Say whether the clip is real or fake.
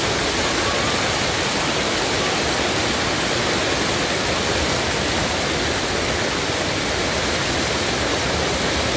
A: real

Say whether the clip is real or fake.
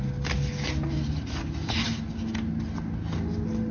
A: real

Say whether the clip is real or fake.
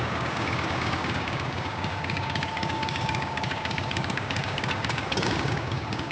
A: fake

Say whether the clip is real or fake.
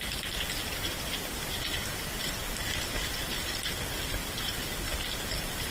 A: fake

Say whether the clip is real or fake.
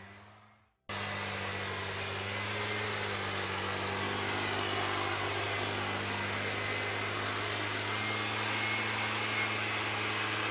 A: real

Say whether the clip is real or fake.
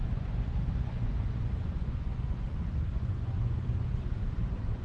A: fake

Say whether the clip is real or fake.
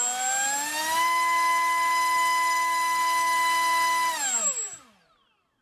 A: real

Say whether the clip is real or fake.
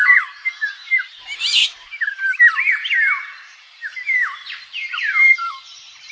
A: fake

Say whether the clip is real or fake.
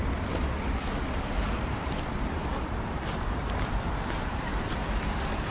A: fake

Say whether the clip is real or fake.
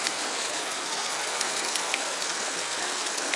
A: fake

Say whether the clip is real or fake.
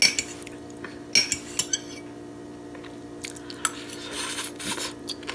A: real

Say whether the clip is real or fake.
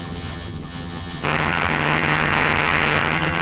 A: fake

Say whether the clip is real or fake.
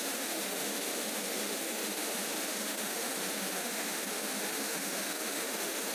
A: fake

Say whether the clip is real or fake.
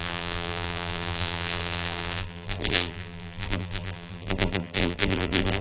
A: fake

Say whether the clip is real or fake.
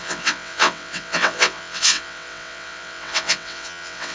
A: fake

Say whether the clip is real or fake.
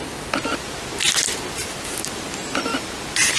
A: real